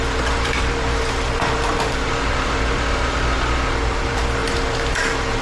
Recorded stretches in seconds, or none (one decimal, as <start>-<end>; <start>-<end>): none